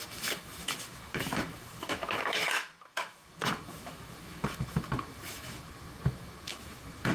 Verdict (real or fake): fake